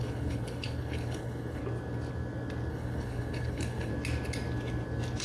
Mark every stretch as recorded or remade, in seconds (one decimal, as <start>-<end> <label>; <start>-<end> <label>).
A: 0.0-1.6 remade; 1.6-2.7 recorded; 2.7-3.9 remade; 3.9-5.2 recorded